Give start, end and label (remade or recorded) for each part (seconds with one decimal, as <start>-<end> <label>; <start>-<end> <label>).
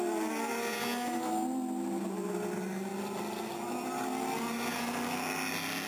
0.0-5.9 recorded